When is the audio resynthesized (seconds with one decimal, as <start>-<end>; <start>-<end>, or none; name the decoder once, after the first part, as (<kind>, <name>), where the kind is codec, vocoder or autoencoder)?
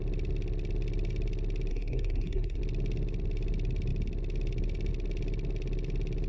1.7-2.6 (codec, SNAC)